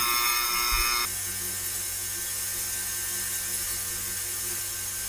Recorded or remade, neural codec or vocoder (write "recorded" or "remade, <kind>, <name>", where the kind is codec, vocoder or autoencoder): recorded